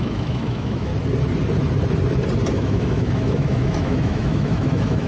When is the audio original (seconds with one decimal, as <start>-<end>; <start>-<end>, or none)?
0.9-2.5